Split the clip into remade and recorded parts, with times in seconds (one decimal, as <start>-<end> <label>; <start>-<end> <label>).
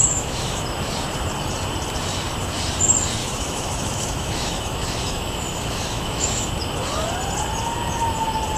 0.0-0.6 remade; 0.6-3.2 recorded; 3.2-6.5 remade; 6.5-8.6 recorded